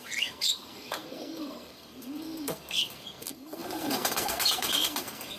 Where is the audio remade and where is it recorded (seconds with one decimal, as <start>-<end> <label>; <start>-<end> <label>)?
0.0-5.4 remade